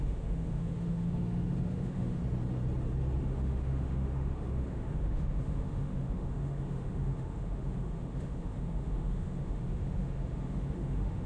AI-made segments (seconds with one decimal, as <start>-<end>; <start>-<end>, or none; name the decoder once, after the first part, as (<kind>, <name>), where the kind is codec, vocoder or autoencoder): 0.0-2.2 (autoencoder, DAC-VAE); 3.2-11.3